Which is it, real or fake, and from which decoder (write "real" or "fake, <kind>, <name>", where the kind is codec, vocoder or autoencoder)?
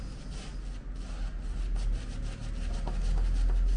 real